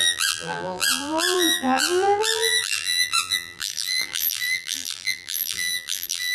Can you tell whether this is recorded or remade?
remade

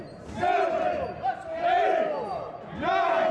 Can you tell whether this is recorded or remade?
recorded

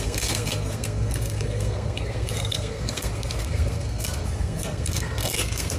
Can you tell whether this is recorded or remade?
remade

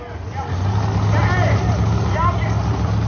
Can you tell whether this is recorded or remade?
recorded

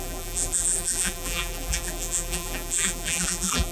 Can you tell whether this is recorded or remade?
remade